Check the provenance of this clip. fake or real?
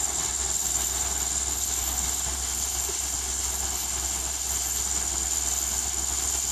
real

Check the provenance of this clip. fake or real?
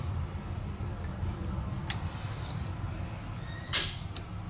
real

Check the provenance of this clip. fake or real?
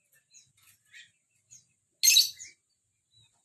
real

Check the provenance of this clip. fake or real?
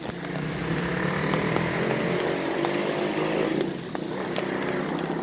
real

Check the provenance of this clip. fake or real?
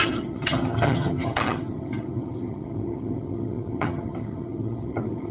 fake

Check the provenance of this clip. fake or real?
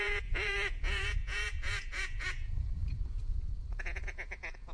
fake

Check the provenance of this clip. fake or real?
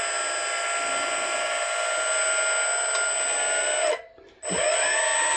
real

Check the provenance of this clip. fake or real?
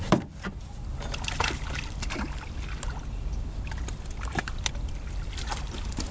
fake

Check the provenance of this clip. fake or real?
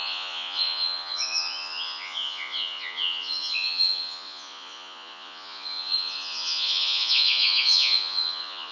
fake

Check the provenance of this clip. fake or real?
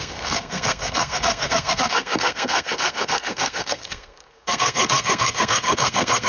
fake